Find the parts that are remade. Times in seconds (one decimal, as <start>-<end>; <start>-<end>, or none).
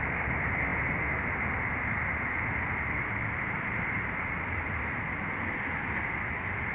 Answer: 3.2-4.3